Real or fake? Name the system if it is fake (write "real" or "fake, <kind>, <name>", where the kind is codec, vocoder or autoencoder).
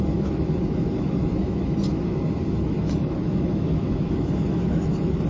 fake, autoencoder, DAC-VAE